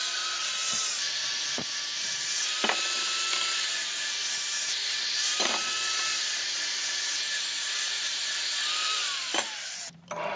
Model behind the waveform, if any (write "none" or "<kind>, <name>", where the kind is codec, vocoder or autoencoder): vocoder, BigVGAN v2